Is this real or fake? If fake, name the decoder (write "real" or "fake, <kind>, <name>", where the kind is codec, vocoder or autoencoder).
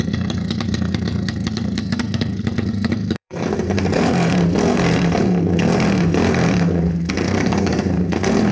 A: fake, codec, SNAC